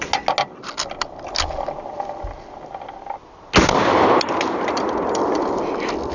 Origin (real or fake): real